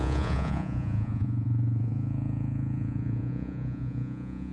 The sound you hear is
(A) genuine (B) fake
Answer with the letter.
B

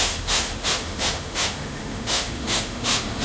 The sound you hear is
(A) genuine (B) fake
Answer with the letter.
B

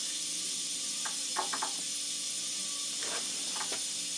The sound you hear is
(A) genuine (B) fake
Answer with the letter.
A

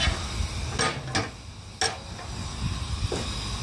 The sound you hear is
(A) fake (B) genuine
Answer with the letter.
B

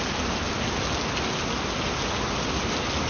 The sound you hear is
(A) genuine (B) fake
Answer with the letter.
A